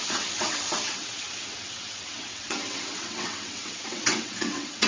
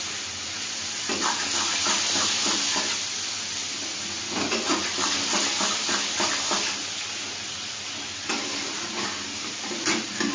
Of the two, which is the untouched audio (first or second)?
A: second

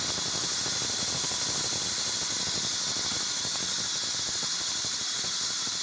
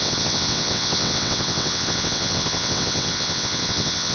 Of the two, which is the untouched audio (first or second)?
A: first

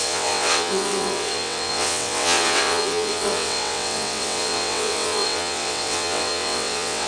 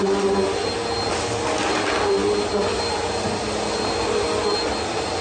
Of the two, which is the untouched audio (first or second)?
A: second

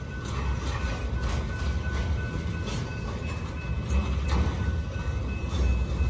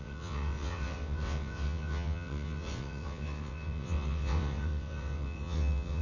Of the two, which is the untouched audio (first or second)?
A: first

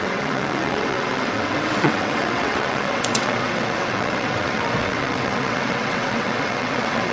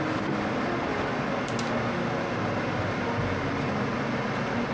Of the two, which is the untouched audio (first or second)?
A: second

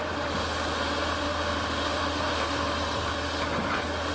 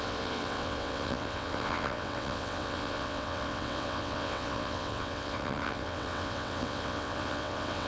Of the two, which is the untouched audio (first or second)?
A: first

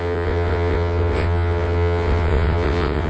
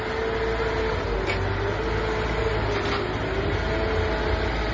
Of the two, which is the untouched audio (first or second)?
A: second